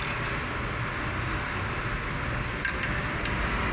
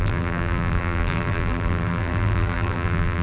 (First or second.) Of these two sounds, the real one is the first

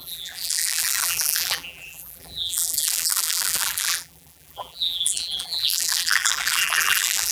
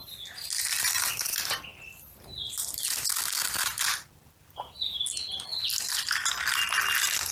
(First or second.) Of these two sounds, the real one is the second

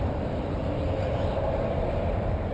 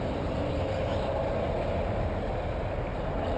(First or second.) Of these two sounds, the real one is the second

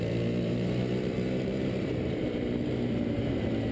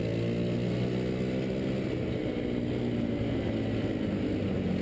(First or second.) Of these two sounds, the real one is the second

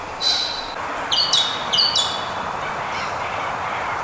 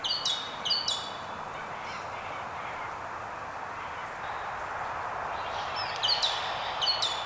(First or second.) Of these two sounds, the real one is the second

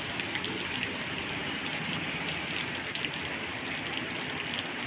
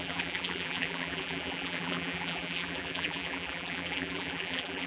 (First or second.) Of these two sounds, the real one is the first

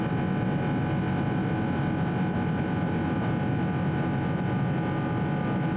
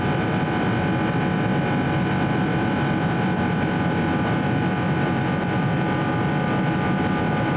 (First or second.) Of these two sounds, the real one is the first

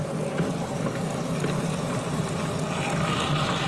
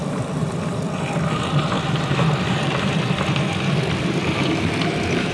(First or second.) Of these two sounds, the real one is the first